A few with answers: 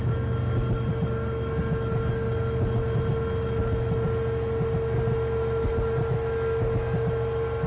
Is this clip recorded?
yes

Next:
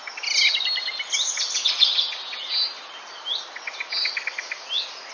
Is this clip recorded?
yes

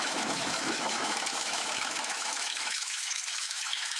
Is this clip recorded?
no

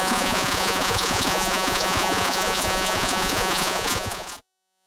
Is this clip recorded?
no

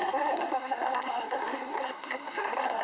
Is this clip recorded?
no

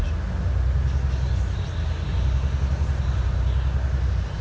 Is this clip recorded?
yes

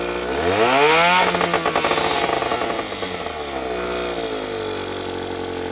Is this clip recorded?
yes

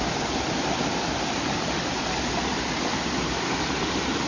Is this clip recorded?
yes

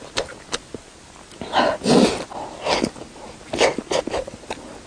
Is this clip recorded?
yes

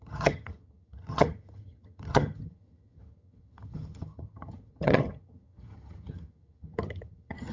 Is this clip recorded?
no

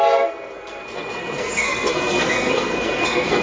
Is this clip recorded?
no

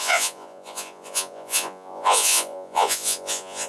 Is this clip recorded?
no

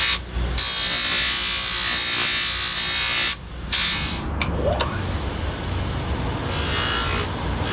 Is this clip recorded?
yes